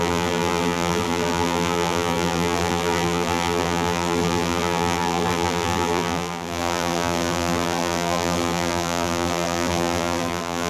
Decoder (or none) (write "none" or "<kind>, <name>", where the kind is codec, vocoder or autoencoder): vocoder, BigVGAN v2